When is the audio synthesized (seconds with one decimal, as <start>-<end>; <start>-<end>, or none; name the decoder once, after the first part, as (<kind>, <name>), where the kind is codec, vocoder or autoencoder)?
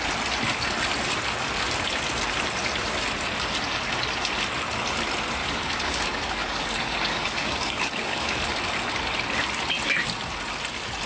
5.4-8.4 (codec, DAC)